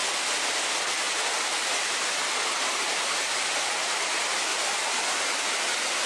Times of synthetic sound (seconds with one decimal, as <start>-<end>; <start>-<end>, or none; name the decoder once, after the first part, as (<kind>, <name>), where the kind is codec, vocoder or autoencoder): 1.6-3.5 (vocoder, BigVGAN v2); 4.5-5.4